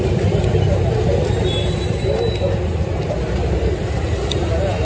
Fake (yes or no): no